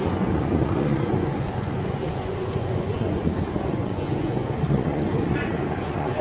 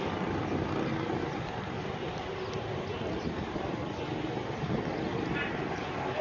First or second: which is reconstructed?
first